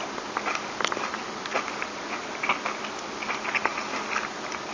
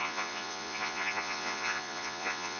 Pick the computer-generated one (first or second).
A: second